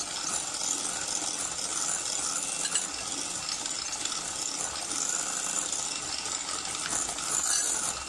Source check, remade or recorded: recorded